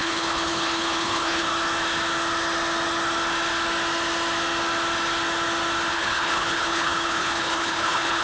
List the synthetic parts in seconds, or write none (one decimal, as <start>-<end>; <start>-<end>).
0.0-1.5; 5.9-8.2

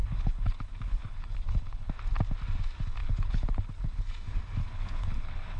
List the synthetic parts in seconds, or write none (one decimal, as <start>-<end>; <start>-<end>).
0.0-1.9; 3.0-4.0; 4.6-5.6

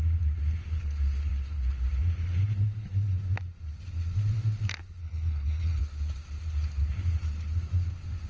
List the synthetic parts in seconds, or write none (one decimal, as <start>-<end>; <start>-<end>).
5.0-5.8

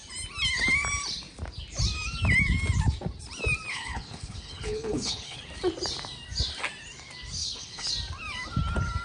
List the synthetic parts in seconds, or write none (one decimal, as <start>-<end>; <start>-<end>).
3.7-5.4; 7.4-7.9

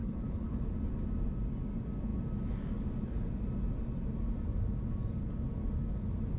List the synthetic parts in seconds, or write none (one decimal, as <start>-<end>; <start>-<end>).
0.0-0.7

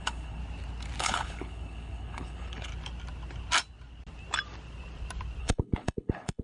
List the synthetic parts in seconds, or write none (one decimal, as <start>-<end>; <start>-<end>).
0.0-0.4; 1.0-2.7; 5.4-6.4

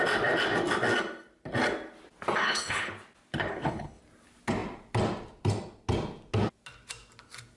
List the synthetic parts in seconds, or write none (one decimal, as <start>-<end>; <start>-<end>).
2.4-2.9; 3.5-4.0

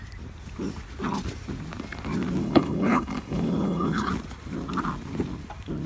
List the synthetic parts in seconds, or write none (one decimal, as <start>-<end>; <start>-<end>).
2.4-4.1